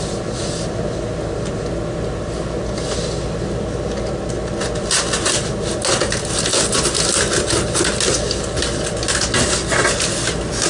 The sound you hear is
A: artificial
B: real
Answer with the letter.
B